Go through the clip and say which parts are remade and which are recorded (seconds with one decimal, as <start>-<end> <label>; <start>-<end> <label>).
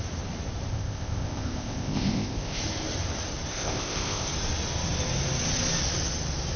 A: 0.0-0.7 recorded; 0.7-2.6 remade; 2.6-3.5 recorded; 3.5-4.3 remade; 4.3-6.6 recorded